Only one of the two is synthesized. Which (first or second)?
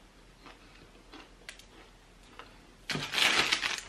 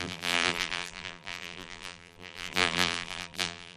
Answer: second